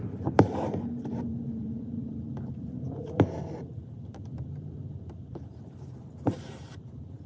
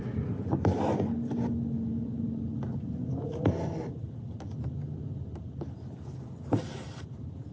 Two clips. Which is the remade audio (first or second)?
first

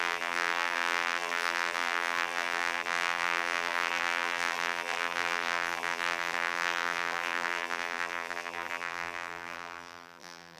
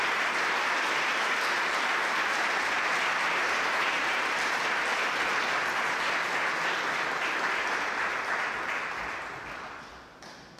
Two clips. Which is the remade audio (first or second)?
first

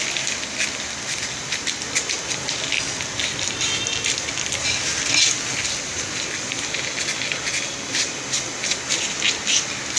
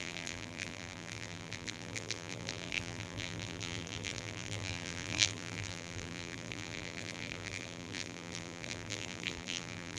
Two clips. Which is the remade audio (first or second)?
second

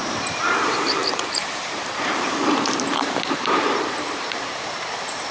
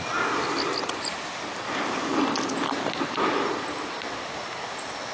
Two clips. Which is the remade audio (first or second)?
first